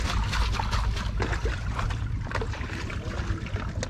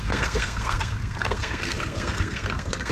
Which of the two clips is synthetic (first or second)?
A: second